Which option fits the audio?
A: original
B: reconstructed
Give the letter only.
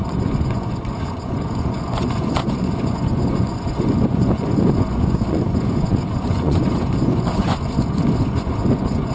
B